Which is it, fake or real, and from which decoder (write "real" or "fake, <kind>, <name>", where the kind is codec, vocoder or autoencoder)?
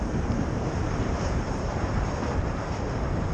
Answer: fake, vocoder, BigVGAN v2